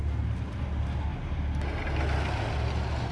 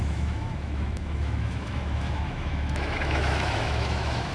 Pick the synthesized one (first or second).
second